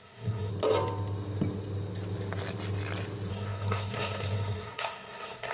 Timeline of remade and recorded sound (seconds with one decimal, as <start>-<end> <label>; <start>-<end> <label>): 0.0-0.5 remade; 0.5-3.3 recorded; 3.3-5.5 remade